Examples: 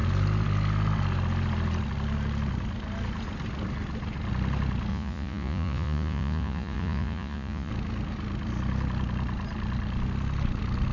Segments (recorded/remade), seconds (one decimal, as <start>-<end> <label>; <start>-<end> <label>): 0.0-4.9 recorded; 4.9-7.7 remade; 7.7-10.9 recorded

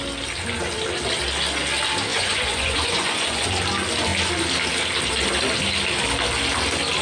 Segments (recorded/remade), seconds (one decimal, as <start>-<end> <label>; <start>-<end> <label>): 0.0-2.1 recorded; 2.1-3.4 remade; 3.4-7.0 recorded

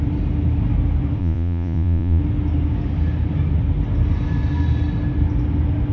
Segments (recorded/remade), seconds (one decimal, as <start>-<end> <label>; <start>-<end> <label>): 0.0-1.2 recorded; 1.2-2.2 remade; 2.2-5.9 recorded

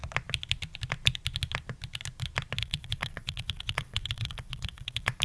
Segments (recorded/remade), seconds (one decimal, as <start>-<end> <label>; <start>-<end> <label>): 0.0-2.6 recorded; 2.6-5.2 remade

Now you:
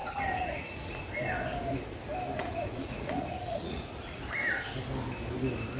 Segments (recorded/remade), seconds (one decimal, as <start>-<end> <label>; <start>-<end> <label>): 0.0-1.0 remade; 1.0-2.4 recorded; 2.4-4.2 remade; 4.2-5.8 recorded

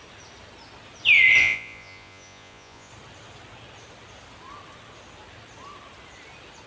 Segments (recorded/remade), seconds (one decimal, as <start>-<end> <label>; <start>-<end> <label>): 0.0-1.4 recorded; 1.4-2.9 remade; 2.9-6.7 recorded